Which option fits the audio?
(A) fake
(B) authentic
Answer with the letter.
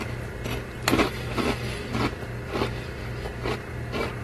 B